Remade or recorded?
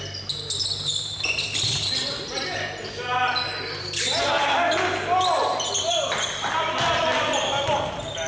recorded